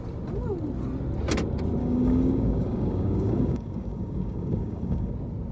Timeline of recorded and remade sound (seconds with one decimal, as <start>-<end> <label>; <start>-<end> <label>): 0.0-1.8 recorded; 1.8-5.1 remade; 5.1-5.5 recorded